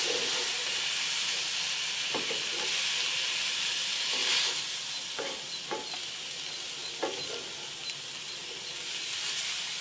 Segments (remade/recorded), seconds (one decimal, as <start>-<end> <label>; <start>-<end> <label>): 0.0-0.6 recorded; 0.6-2.6 remade; 2.6-4.2 recorded; 4.2-5.6 remade; 5.6-6.8 recorded; 6.8-9.8 remade